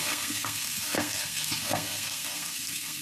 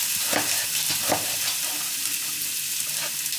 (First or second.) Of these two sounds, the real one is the second